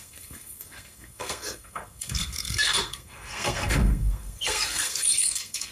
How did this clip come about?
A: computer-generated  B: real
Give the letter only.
A